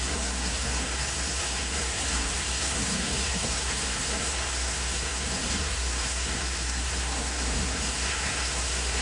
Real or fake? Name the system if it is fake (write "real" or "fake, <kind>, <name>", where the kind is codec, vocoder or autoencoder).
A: fake, codec, SNAC